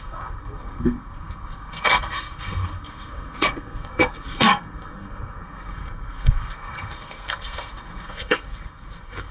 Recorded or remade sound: remade